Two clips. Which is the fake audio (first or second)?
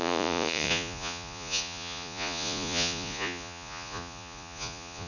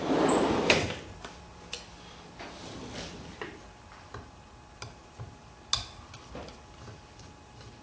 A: first